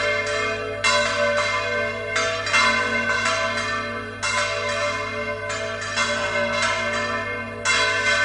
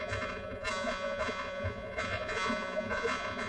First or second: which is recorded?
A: first